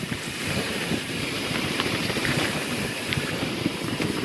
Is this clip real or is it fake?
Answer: fake